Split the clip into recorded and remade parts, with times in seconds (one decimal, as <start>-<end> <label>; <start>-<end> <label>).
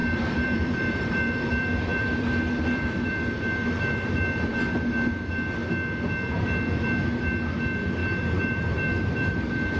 0.0-4.1 remade; 4.1-8.0 recorded; 8.0-9.4 remade; 9.4-9.8 recorded